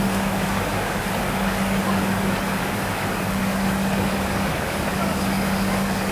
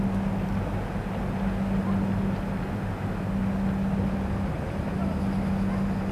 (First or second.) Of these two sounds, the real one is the second